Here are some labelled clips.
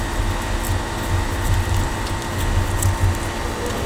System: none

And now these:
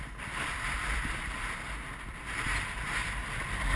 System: none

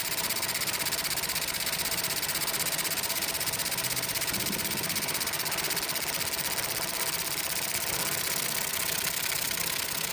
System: none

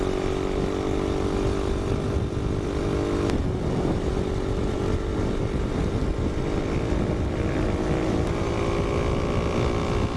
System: none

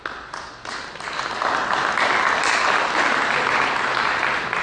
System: none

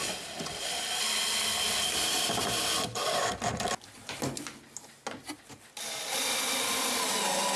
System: none